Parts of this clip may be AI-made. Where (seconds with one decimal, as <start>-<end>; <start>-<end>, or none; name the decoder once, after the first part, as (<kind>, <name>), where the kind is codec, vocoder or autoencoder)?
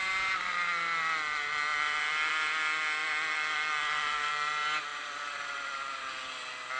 1.7-2.3 (vocoder, BigVGAN v2); 3.0-4.3; 4.9-6.0